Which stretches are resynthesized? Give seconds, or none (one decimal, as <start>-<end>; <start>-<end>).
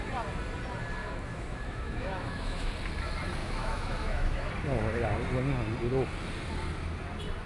1.0-2.7; 3.4-4.5